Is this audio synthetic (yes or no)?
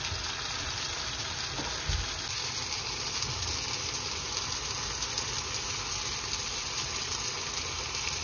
no